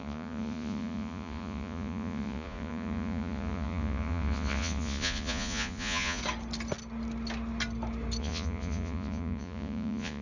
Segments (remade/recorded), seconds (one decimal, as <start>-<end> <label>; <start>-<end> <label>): 0.0-6.2 remade; 6.2-8.2 recorded; 8.2-10.2 remade